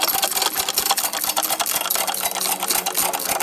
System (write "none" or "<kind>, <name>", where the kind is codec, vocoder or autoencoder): none